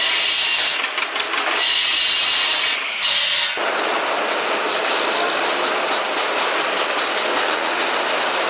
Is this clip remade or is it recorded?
recorded